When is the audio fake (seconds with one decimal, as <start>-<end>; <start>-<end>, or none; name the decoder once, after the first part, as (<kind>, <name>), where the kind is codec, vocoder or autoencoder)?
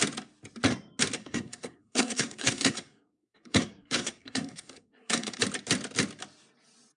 1.2-5.4 (codec, SNAC)